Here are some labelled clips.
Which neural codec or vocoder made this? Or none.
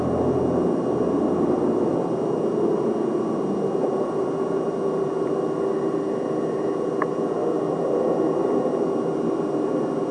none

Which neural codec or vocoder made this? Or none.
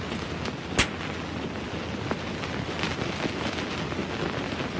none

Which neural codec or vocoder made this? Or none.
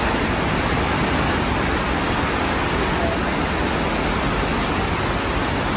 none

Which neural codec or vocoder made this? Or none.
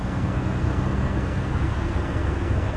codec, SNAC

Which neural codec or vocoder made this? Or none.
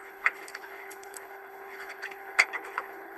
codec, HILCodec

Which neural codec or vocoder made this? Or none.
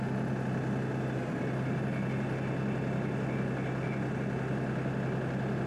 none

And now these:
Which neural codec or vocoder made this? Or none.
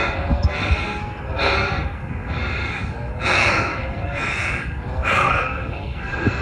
codec, SNAC